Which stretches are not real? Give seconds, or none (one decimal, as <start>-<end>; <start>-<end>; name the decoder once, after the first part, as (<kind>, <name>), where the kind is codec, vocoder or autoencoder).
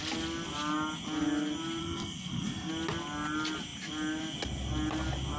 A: 1.8-2.7 (codec, SNAC)